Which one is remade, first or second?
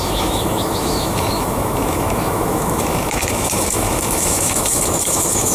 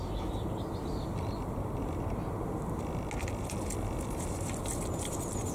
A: first